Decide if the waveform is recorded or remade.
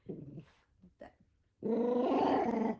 recorded